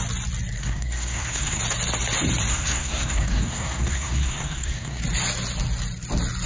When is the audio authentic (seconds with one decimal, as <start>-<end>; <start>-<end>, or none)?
0.0-0.6; 1.6-2.5; 5.0-6.5